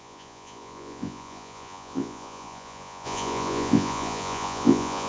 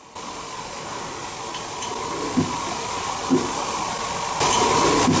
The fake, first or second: first